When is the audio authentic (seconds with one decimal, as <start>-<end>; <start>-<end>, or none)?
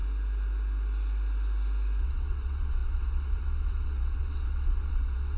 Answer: 0.0-2.0